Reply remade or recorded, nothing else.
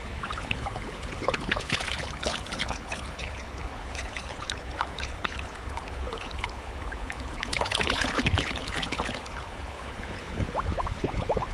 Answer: remade